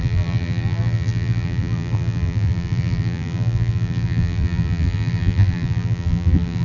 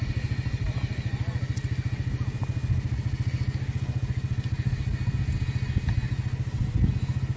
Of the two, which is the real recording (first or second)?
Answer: second